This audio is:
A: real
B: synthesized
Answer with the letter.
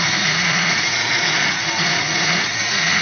B